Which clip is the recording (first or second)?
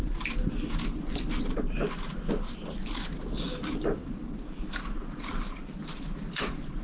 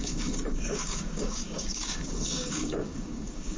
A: first